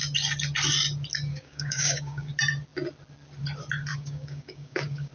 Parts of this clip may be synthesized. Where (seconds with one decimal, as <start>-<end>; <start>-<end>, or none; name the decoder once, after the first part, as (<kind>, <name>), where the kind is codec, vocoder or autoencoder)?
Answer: 1.3-2.3 (codec, DAC); 3.9-5.1